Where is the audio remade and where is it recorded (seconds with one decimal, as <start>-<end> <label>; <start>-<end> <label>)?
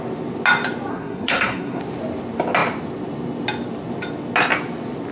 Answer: 0.0-0.9 recorded; 0.9-1.8 remade; 1.8-5.1 recorded